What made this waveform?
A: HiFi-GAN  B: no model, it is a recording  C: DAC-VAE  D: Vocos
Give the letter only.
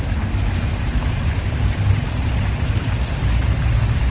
B